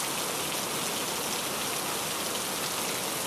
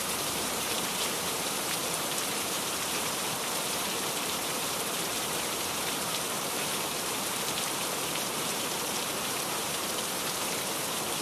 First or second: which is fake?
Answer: second